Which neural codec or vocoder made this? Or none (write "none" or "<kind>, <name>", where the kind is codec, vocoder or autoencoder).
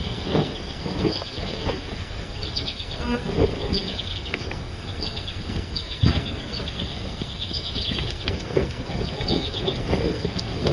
codec, SNAC